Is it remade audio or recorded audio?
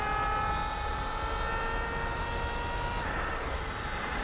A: recorded